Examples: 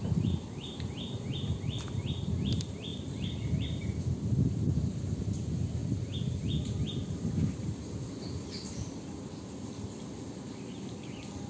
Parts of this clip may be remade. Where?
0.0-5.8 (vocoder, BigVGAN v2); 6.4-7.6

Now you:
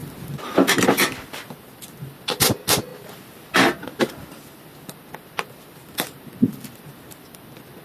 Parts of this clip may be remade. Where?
none

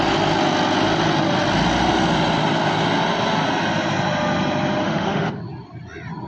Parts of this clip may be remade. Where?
4.8-5.4 (autoencoder, DAC-VAE)

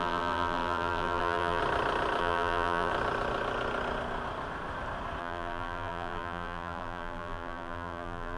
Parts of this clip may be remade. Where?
0.0-1.6 (vocoder, BigVGAN v2); 2.2-2.9; 5.2-8.4

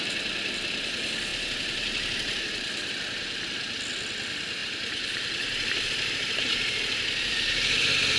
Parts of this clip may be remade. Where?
1.3-2.9 (vocoder, BigVGAN v2); 4.6-7.3